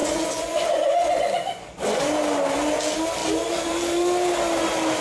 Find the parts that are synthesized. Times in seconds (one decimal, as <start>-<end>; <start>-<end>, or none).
0.0-2.0